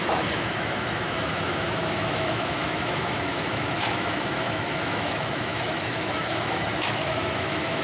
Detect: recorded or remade remade